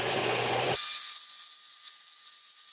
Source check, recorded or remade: remade